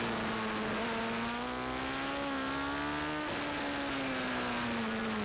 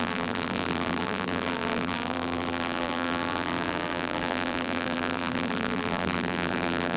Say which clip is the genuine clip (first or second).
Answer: first